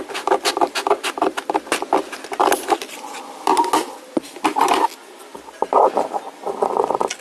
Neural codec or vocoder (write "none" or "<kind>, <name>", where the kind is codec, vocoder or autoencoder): none